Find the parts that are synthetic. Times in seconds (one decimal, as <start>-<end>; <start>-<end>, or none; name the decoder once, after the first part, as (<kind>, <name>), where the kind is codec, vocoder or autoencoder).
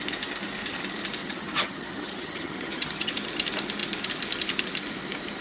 1.2-3.1 (vocoder, HiFi-GAN)